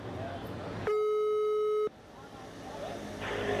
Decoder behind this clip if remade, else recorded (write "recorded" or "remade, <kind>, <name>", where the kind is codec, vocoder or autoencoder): recorded